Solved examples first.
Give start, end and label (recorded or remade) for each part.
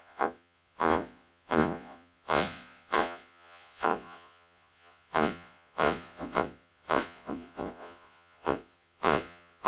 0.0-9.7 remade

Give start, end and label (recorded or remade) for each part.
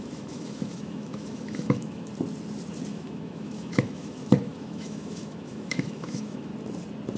0.0-2.1 remade; 2.1-2.9 recorded; 2.9-6.5 remade; 6.5-7.2 recorded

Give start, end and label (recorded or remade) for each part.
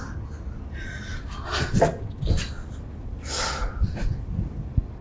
0.0-5.0 recorded